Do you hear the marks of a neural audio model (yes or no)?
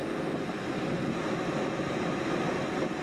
no